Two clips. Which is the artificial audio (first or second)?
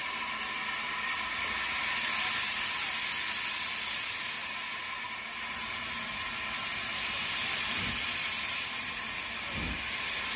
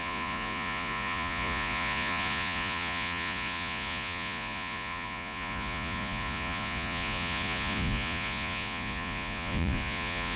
second